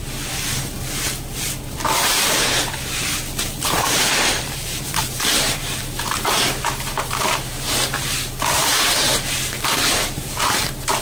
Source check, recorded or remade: remade